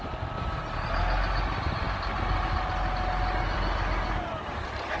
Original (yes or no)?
yes